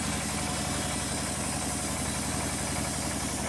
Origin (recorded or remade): recorded